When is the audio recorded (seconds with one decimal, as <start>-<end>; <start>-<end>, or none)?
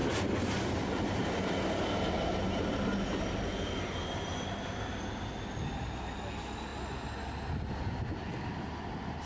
0.0-9.3